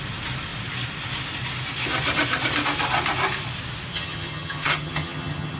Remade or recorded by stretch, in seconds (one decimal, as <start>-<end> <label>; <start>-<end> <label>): 0.0-3.9 recorded; 3.9-5.6 remade